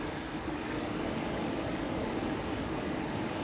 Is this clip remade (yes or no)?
yes